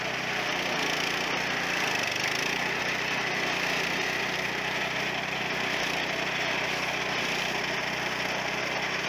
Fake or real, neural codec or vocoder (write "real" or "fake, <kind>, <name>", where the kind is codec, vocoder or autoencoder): real